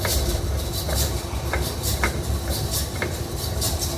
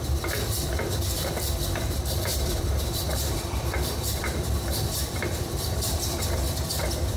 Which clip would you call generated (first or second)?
second